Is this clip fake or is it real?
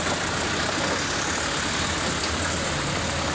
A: real